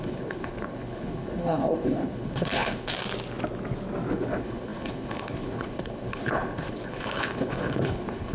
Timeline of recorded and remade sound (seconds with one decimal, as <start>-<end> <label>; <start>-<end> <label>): 0.0-2.9 remade; 2.9-4.1 recorded; 4.1-8.3 remade